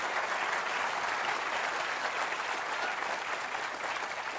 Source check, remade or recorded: recorded